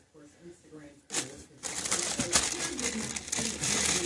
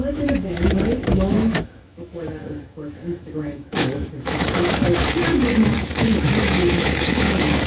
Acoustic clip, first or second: first